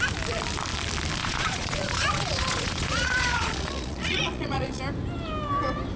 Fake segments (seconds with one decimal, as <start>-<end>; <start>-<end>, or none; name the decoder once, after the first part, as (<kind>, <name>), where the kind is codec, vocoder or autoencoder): 1.2-4.8 (vocoder, Vocos)